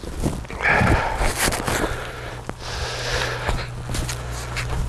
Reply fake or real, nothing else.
real